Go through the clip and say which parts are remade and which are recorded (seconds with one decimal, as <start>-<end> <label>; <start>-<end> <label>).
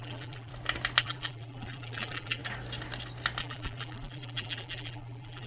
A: 0.0-0.5 remade; 0.5-1.0 recorded; 1.0-2.4 remade; 2.4-3.4 recorded; 3.4-5.5 remade